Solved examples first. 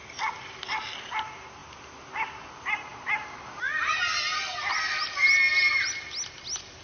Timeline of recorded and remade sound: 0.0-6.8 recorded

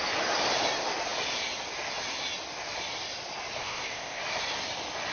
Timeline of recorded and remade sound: 0.0-3.6 recorded; 3.6-4.2 remade; 4.2-5.1 recorded

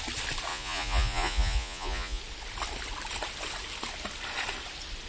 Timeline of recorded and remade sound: 0.0-0.5 recorded; 0.5-2.2 remade; 2.2-5.1 recorded

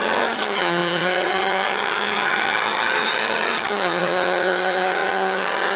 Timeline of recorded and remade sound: 0.0-5.8 remade

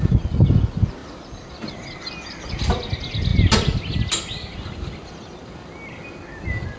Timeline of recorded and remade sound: 0.0-1.0 recorded; 1.0-1.5 remade; 1.5-6.8 recorded

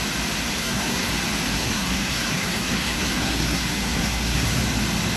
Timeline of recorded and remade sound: 0.0-0.5 recorded; 0.5-1.1 remade; 1.1-1.5 recorded; 1.5-4.6 remade; 4.6-5.2 recorded